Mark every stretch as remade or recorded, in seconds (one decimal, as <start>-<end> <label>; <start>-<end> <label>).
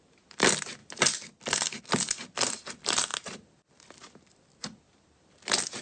0.0-5.8 recorded